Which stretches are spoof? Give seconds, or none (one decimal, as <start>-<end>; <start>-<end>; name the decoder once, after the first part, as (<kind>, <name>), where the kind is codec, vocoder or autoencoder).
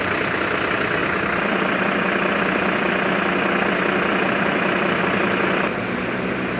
none